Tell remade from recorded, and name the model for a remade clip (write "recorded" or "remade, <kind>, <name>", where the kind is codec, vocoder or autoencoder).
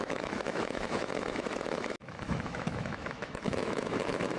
remade, autoencoder, DAC-VAE